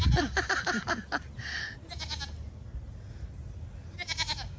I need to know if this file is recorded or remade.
recorded